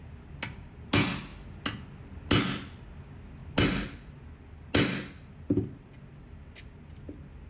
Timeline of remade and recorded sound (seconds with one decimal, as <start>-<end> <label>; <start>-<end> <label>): 0.0-7.5 recorded